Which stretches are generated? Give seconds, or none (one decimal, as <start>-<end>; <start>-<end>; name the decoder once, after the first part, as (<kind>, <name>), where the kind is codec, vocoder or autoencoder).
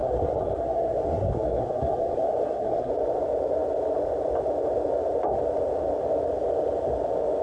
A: 0.0-2.9 (codec, SNAC)